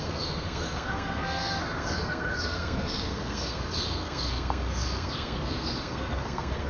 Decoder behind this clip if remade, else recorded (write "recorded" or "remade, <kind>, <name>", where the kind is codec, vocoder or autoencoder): remade, codec, SNAC